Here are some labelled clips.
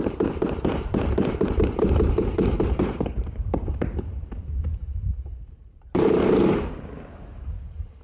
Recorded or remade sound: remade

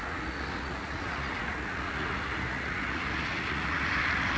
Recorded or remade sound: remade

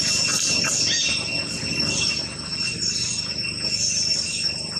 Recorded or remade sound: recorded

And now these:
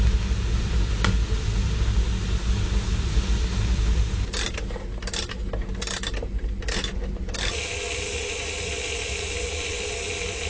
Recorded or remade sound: recorded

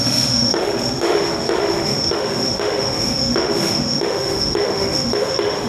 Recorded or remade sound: remade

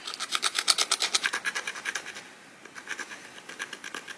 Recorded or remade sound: recorded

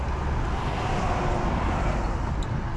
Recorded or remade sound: recorded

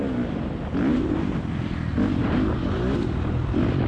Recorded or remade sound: recorded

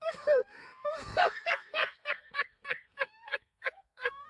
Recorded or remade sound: remade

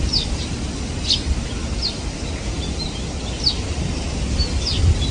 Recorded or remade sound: recorded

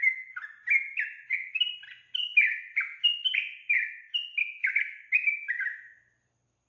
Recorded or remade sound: recorded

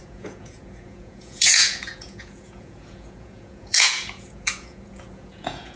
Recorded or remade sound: remade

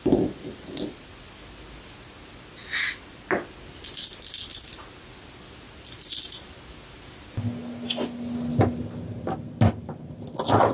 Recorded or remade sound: recorded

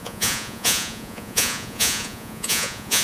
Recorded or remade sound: remade